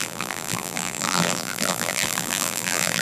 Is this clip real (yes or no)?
no